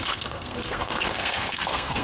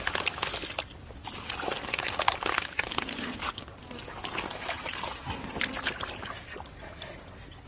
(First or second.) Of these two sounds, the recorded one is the second